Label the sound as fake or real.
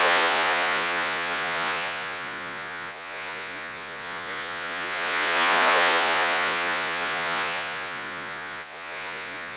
fake